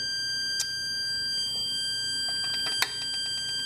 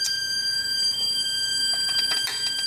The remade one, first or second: second